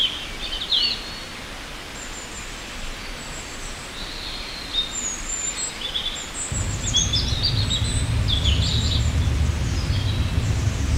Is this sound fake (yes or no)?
no